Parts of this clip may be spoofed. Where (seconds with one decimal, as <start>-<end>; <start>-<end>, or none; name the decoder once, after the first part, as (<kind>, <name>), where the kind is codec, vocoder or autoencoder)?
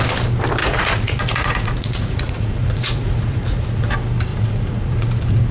0.6-3.9 (vocoder, Vocos); 4.3-5.1